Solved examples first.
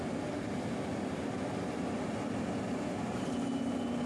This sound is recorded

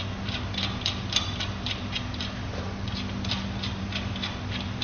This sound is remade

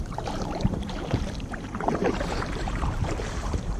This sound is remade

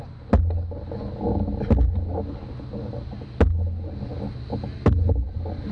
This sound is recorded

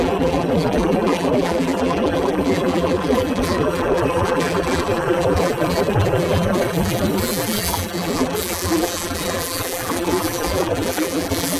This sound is remade